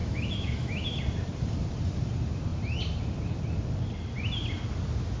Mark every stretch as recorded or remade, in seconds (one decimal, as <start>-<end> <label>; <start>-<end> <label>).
0.0-1.0 remade; 1.0-5.2 recorded